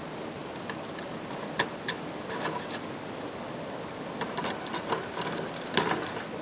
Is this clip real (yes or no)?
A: yes